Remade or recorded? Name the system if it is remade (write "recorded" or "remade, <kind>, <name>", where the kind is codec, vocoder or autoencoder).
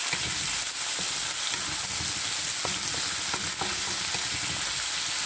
recorded